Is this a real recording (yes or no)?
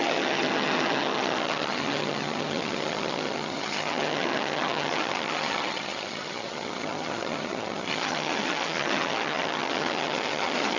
no